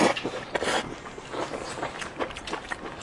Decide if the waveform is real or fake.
real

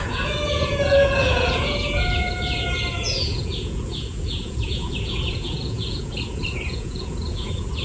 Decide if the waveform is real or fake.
fake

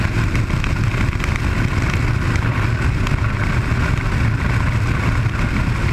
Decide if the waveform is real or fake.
real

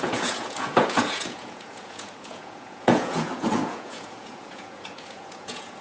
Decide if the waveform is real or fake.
fake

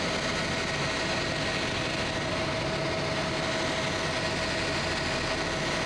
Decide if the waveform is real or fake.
real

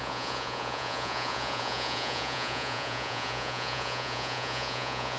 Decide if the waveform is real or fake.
fake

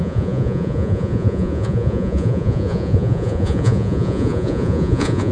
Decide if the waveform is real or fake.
fake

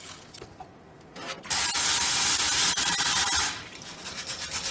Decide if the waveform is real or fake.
real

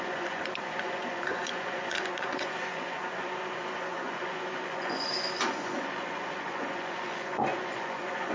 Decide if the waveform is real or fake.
fake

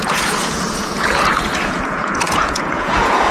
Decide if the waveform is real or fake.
fake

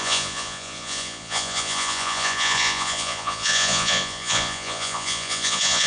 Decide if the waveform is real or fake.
fake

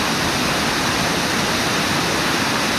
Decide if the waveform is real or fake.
real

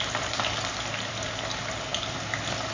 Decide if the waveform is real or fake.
real